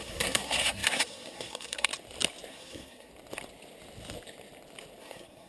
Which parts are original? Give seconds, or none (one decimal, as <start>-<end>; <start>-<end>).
1.9-2.5; 3.1-5.0